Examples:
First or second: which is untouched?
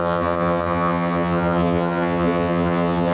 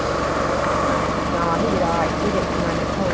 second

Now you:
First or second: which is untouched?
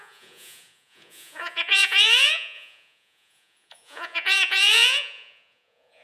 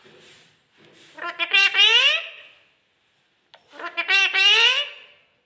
second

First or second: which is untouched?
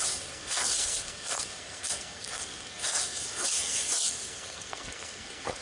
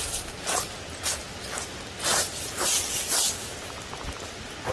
second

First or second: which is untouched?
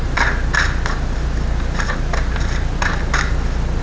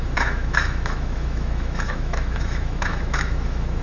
first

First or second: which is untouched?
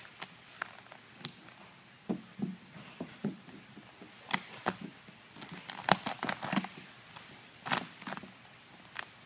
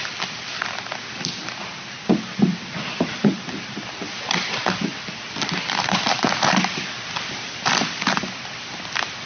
first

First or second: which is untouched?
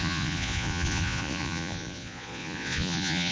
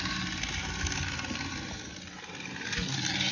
second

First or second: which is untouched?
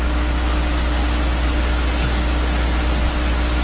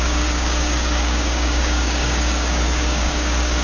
first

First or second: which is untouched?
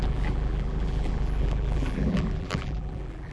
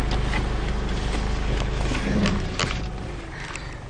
second